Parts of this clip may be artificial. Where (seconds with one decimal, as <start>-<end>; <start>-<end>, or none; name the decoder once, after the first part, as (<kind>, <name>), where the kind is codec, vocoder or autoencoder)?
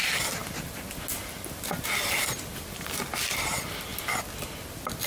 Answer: none